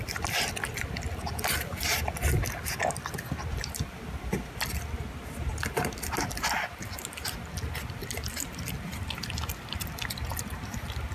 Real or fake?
real